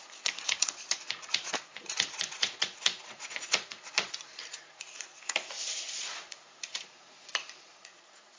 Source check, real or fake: fake